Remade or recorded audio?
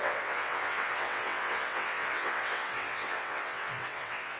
remade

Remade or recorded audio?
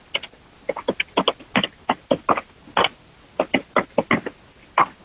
recorded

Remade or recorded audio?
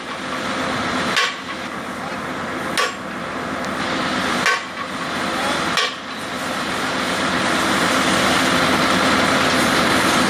recorded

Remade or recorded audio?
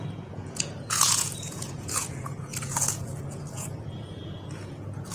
remade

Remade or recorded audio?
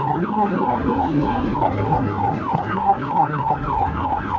remade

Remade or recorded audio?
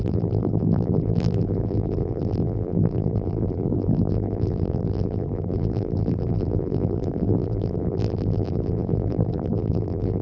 remade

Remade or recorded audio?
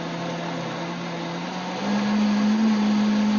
recorded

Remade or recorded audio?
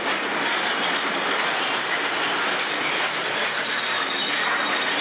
recorded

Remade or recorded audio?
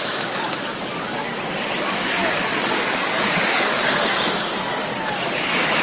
remade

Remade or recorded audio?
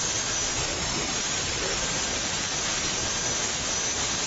recorded